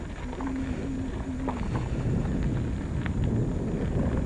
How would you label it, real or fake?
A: real